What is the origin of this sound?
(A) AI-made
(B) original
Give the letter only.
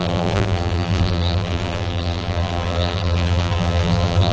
A